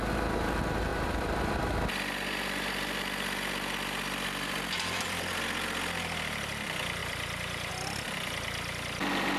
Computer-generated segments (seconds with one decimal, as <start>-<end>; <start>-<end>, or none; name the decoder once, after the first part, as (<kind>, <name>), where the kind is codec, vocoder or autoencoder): 0.9-5.2 (vocoder, BigVGAN v2); 7.0-7.7